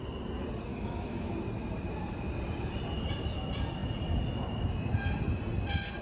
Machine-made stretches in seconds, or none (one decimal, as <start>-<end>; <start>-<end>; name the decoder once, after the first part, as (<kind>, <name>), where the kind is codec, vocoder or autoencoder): 0.7-1.3 (autoencoder, DAC-VAE)

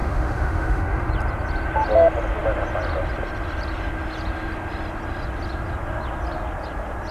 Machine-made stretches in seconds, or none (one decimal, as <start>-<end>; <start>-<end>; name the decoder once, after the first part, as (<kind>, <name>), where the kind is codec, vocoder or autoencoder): 0.0-1.1 (autoencoder, DAC-VAE)

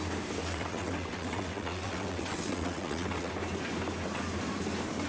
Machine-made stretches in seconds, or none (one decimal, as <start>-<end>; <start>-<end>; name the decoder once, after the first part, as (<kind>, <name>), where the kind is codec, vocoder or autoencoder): 0.4-3.3 (vocoder, WaveNeXt)

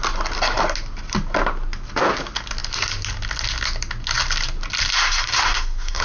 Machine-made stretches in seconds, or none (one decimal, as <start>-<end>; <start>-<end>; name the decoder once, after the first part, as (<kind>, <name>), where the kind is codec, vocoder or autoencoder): 4.9-6.0 (codec, SNAC)

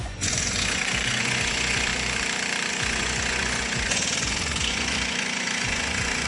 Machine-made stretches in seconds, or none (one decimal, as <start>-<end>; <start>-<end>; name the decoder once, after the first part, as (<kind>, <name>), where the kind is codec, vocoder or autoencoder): 0.0-1.9 (vocoder, Vocos); 2.7-6.3